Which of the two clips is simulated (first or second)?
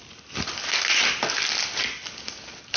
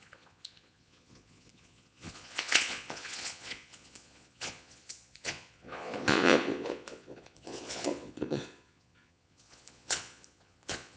second